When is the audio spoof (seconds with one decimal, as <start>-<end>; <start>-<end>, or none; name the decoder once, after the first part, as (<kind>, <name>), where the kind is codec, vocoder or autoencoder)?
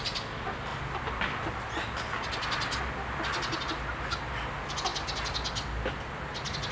none